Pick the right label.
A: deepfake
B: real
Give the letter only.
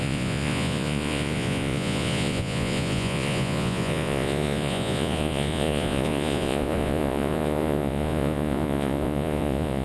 A